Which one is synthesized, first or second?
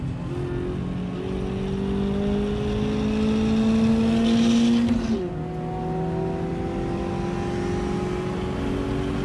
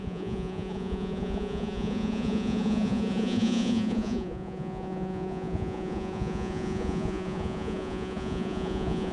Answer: second